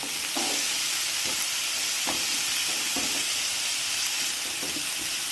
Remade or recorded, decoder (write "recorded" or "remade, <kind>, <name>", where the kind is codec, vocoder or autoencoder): recorded